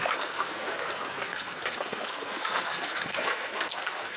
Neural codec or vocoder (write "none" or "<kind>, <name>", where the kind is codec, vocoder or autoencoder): codec, SNAC